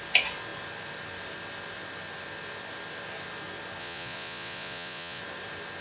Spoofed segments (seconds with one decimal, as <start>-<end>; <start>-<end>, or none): 3.8-5.2